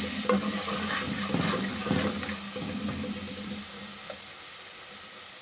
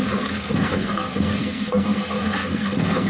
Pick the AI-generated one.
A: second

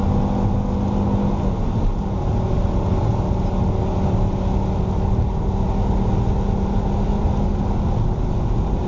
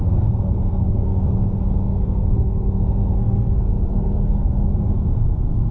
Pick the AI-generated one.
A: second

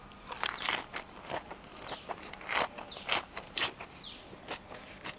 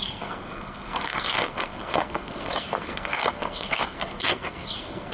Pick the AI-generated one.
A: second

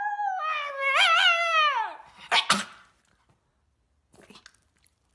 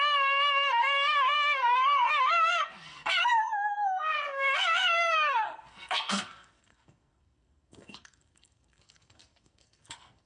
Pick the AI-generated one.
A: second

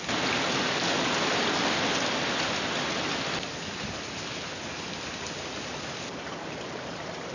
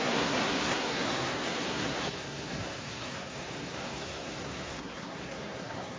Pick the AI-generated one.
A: second